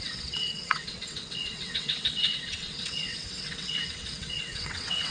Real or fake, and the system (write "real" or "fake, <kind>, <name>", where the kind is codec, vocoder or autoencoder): fake, vocoder, WaveNeXt